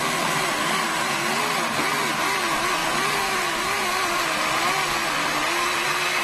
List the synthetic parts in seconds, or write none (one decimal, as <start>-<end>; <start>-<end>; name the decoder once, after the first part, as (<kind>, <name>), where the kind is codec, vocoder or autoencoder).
none